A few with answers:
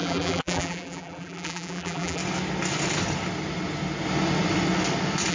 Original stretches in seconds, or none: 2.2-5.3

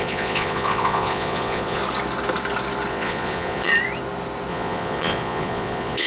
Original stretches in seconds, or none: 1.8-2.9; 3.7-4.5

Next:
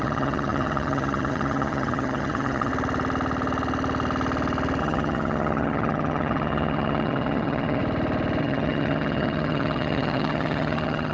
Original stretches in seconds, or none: 2.7-4.8; 7.8-8.4

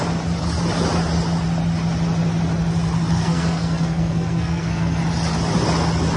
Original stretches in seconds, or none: 0.0-3.1; 5.0-6.2